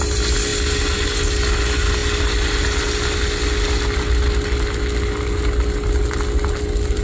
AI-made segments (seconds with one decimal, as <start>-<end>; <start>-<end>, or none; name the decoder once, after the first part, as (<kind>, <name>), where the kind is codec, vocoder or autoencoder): none